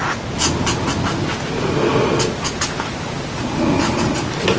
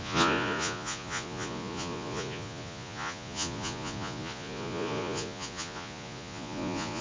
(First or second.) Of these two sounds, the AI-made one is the second